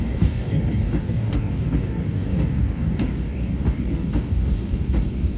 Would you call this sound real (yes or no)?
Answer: no